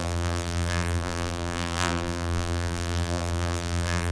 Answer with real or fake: fake